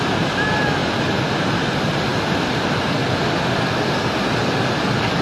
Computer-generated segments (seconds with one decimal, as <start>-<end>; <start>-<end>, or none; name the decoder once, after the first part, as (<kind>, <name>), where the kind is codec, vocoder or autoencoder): none

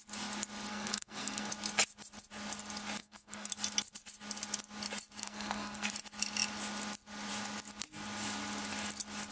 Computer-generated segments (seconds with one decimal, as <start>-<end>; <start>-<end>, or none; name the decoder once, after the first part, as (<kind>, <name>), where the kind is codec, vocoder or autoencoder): 0.7-1.5 (codec, SNAC); 3.0-3.5; 5.2-5.9

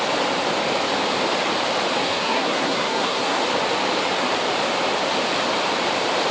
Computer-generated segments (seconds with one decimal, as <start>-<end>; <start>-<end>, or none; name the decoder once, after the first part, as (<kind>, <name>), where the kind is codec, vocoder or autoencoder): 2.0-3.4 (codec, SNAC)

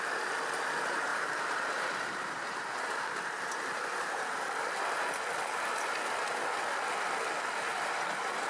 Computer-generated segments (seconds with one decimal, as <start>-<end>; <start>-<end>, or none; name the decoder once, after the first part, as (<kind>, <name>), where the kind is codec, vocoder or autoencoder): 1.1-4.4 (vocoder, BigVGAN v2); 7.7-8.5